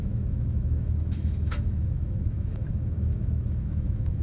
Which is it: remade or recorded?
remade